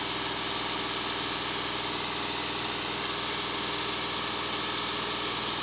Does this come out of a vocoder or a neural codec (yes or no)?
no